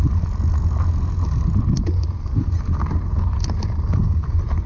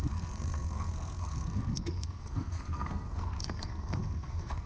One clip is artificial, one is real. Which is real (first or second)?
first